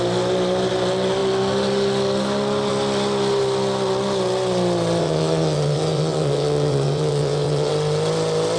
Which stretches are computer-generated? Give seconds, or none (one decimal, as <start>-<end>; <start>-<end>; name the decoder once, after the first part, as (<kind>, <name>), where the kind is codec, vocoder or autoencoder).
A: 5.0-7.7 (vocoder, WaveNeXt)